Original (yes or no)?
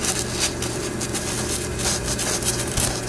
no